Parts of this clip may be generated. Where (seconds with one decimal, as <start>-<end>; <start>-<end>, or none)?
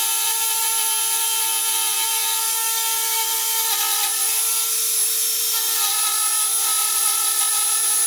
6.8-7.4